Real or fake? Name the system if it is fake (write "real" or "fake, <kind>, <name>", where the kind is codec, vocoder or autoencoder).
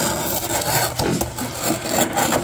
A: real